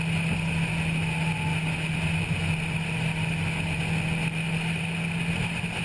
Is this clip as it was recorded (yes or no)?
yes